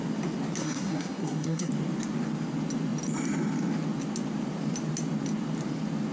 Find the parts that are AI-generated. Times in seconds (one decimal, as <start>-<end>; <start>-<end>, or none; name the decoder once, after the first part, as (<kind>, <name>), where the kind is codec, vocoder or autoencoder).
0.6-1.7 (codec, SNAC)